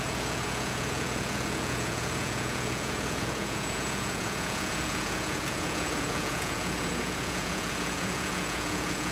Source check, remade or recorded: remade